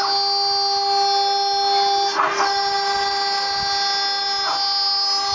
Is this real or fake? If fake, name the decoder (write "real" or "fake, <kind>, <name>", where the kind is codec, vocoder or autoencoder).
real